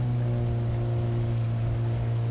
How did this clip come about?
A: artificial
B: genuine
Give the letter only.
B